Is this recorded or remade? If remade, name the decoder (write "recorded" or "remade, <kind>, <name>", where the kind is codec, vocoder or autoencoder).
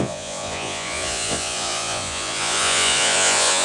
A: remade, vocoder, Vocos